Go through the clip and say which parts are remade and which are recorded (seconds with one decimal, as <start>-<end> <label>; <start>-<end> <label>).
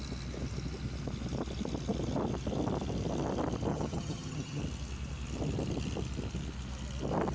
0.0-3.7 recorded; 3.7-4.6 remade; 4.6-7.3 recorded